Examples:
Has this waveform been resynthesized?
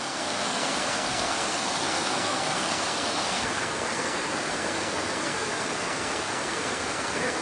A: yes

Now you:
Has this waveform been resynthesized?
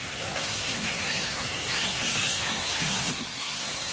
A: yes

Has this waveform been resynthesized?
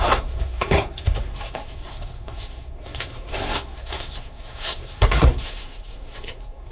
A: yes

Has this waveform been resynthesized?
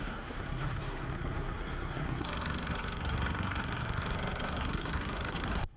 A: yes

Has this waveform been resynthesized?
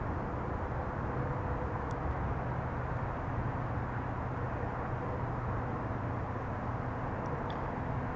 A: no